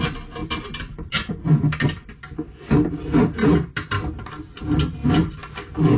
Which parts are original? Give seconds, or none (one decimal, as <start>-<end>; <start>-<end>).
0.0-0.4; 1.3-6.0